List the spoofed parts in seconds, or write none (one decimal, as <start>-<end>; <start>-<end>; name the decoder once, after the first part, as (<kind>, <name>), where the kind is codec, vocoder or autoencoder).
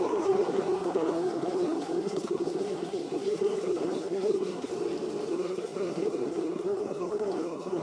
0.0-4.7 (codec, SNAC); 5.3-7.8